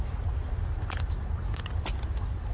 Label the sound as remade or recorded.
recorded